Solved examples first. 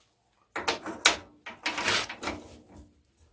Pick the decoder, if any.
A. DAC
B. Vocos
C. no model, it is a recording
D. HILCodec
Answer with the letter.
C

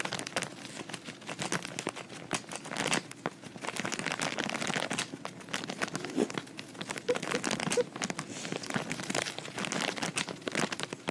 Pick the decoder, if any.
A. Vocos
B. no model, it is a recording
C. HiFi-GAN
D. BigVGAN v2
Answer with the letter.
B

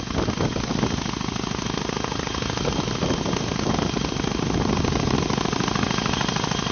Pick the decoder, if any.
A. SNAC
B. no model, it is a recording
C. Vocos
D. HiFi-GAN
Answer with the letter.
B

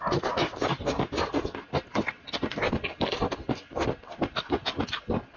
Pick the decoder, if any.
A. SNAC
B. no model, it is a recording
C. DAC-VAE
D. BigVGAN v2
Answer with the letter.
B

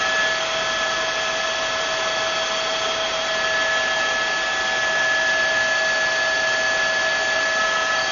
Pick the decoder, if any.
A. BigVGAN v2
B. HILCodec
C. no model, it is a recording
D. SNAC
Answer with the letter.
C